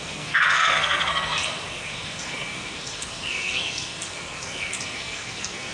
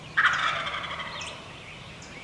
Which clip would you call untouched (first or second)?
second